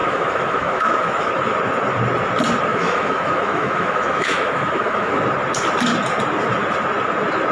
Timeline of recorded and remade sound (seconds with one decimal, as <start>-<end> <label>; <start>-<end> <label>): 0.0-1.3 remade; 1.3-2.7 recorded; 2.7-5.2 remade; 5.2-7.5 recorded